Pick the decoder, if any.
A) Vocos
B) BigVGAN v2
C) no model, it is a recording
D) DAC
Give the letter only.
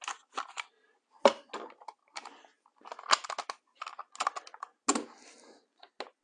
C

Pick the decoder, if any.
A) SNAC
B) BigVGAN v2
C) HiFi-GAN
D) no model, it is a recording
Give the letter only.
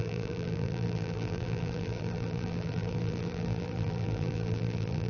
B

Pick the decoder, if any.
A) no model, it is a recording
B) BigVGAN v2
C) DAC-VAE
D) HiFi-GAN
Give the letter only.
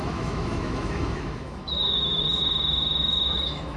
C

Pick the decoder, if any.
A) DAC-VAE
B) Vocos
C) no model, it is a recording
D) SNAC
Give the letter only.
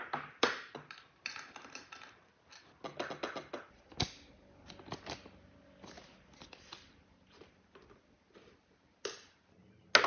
C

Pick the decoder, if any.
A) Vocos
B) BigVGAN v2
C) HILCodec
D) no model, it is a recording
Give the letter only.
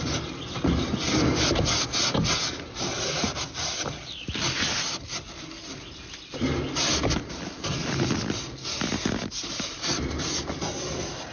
D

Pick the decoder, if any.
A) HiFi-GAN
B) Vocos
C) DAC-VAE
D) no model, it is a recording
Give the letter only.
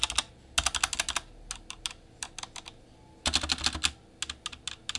D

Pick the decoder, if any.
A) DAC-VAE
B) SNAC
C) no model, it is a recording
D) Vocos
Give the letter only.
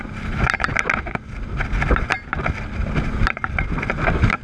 C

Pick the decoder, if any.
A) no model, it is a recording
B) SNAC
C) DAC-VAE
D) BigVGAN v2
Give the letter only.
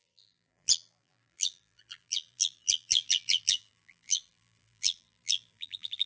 D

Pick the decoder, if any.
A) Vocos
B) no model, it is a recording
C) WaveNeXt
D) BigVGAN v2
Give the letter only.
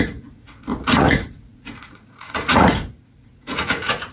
A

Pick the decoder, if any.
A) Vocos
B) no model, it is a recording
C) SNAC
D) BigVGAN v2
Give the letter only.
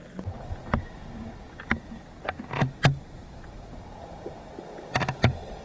B